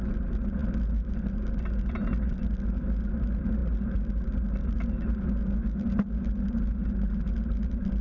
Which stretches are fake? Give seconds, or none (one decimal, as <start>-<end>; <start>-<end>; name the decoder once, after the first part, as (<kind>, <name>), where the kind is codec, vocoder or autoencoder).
none